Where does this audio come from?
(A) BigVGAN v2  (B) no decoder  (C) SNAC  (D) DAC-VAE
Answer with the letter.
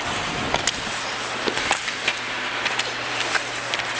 B